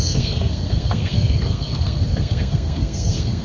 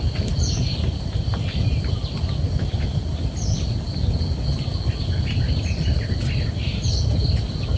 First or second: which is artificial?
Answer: first